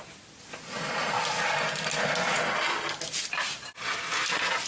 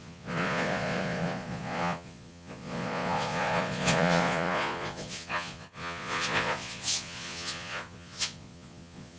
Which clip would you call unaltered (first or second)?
first